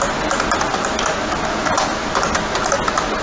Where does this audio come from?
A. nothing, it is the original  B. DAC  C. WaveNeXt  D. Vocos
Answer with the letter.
A